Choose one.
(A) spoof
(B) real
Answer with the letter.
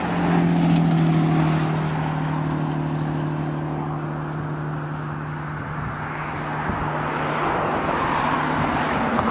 B